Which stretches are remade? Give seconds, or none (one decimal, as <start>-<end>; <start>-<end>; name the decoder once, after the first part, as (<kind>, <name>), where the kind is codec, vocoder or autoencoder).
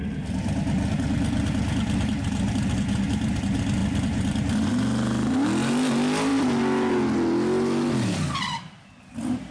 none